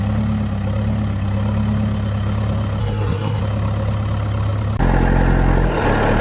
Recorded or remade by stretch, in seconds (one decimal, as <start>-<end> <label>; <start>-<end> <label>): 0.0-2.8 recorded; 2.8-3.4 remade; 3.4-6.2 recorded